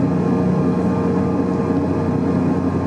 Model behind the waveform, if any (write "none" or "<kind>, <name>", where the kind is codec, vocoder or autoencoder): none